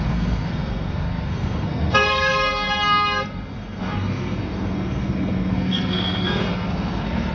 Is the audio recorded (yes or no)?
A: no